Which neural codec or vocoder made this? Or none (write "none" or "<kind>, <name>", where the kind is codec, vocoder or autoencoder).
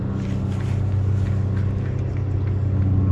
none